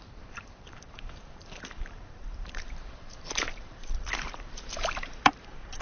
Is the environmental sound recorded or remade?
remade